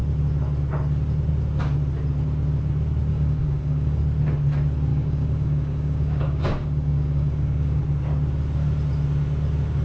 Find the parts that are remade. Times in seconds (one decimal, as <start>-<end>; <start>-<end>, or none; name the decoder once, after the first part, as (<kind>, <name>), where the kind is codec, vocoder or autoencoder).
3.1-4.0 (codec, DAC); 4.9-7.8